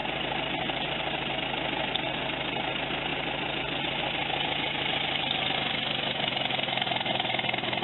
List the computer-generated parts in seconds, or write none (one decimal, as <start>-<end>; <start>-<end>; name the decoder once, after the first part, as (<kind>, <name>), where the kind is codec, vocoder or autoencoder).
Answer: 0.0-1.3 (vocoder, BigVGAN v2)